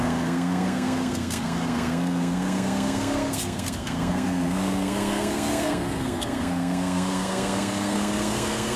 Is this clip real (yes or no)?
no